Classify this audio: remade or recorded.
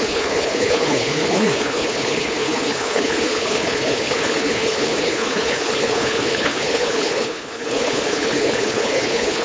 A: remade